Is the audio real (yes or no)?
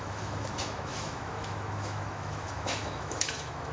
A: no